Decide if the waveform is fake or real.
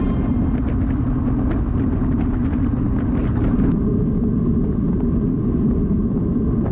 real